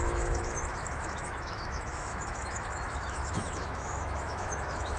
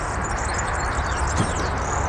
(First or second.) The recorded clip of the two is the second